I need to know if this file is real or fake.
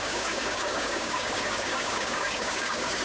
fake